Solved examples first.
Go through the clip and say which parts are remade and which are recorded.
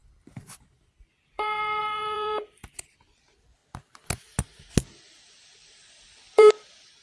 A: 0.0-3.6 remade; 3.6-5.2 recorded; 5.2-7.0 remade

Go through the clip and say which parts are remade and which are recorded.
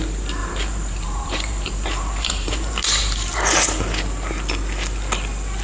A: 0.0-0.4 recorded; 0.4-3.8 remade; 3.8-5.6 recorded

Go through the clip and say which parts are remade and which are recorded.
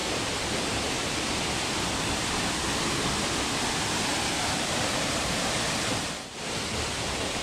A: 0.0-4.1 recorded; 4.1-7.4 remade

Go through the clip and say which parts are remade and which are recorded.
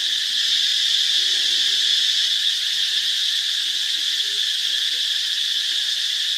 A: 0.0-0.7 recorded; 0.7-1.4 remade; 1.4-6.4 recorded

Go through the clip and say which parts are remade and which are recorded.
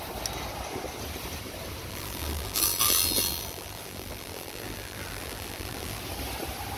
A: 0.0-1.9 recorded; 1.9-6.0 remade; 6.0-6.8 recorded